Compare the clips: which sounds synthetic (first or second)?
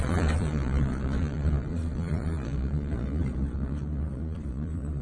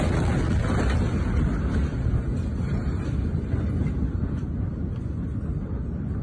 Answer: first